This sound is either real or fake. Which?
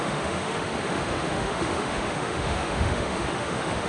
fake